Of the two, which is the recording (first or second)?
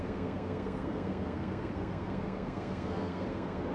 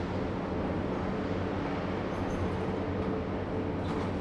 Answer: second